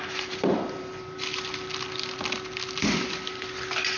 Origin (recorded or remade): remade